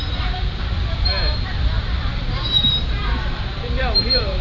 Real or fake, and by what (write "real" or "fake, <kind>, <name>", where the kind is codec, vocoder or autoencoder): fake, vocoder, BigVGAN v2